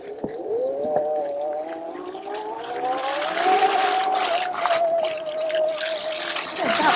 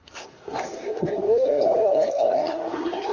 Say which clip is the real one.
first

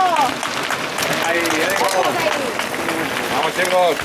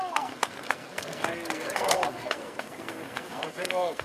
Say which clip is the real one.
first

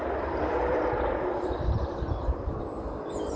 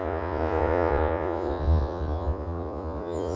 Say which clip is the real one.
first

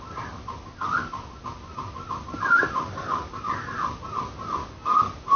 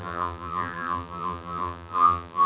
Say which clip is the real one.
first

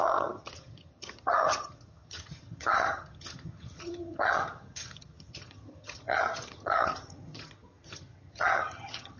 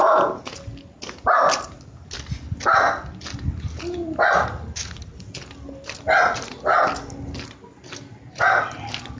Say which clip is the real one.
second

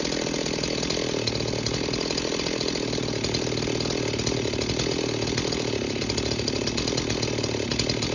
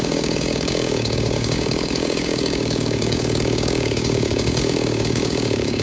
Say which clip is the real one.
first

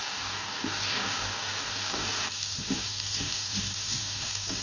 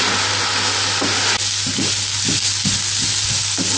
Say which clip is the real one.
second